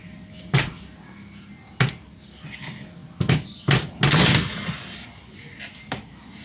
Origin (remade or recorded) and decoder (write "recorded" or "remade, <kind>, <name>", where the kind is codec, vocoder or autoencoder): recorded